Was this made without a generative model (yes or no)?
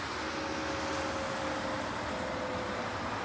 yes